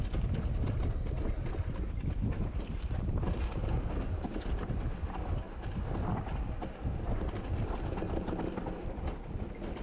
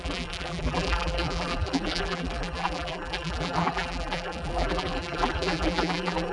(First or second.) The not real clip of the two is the second